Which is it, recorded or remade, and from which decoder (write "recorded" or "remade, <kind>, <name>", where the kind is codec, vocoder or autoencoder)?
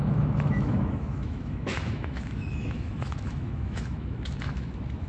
remade, autoencoder, DAC-VAE